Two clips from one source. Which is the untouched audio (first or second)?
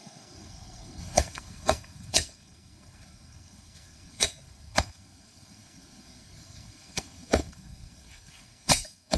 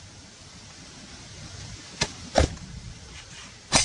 second